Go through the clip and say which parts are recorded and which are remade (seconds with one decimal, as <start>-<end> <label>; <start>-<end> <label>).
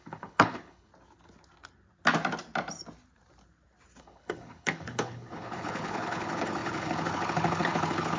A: 0.0-0.9 remade; 0.9-4.0 recorded; 4.0-8.2 remade